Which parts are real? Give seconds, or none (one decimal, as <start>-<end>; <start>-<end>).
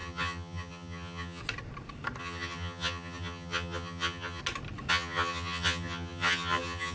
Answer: 1.4-2.2; 4.4-4.9